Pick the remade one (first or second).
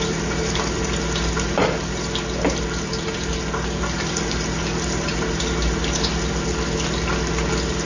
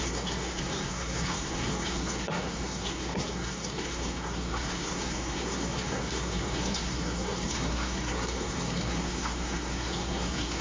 second